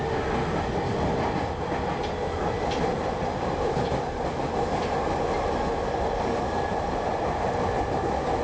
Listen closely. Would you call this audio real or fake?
real